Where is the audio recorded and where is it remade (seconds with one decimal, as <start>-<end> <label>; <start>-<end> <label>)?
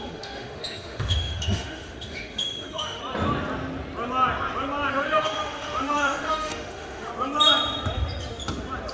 0.0-3.0 remade; 3.0-4.9 recorded; 4.9-7.1 remade; 7.1-8.9 recorded